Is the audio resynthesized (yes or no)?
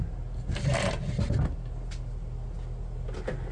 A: no